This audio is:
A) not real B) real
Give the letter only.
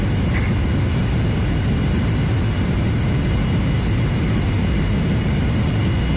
A